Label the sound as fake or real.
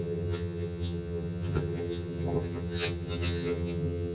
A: fake